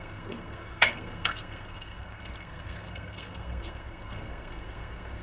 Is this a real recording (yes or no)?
no